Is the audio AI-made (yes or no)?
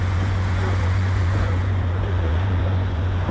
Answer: yes